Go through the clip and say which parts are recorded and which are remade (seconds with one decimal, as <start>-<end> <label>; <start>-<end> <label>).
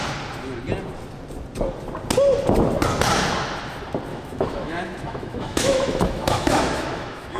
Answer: 0.0-4.1 recorded; 4.1-7.4 remade